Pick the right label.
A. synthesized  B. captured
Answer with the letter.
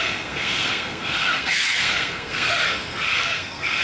A